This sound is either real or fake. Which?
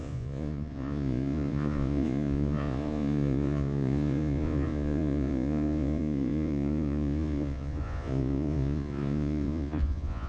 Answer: fake